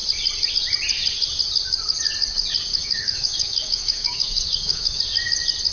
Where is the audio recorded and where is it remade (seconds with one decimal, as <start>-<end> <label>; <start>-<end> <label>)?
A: 0.0-2.7 recorded; 2.7-5.0 remade; 5.0-5.7 recorded